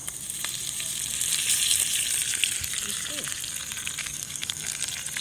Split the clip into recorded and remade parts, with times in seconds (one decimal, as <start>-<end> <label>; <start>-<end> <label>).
0.0-4.0 recorded; 4.0-4.8 remade; 4.8-5.2 recorded